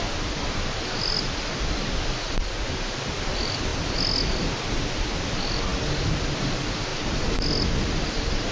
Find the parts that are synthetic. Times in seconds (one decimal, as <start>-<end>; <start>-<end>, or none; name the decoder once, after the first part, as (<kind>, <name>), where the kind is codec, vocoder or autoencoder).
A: none